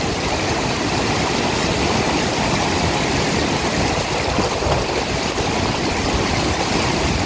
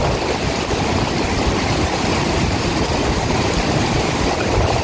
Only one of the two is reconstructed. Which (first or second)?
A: second